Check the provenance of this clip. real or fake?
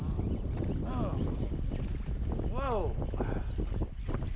real